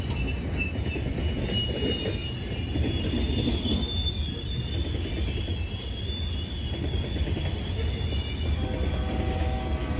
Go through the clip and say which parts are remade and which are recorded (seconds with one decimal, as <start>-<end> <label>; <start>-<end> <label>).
0.0-10.0 recorded